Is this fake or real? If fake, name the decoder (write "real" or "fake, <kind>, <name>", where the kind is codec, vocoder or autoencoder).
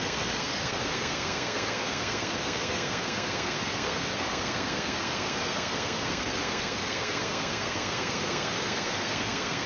fake, codec, SNAC